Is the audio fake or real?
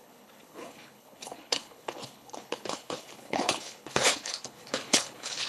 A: fake